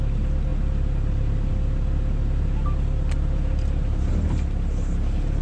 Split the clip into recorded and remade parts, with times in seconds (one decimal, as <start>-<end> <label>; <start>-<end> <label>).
0.0-5.4 recorded